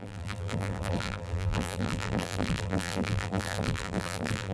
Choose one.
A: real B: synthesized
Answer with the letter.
B